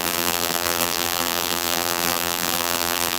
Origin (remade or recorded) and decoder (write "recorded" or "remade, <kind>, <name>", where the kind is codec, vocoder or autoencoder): remade, vocoder, BigVGAN v2